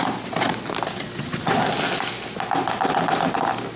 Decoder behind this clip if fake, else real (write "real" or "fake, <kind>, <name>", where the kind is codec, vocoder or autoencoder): real